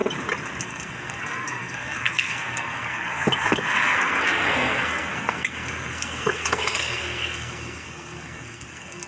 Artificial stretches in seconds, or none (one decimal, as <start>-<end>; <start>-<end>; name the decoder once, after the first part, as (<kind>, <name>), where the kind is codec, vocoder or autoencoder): 0.6-9.1 (codec, SNAC)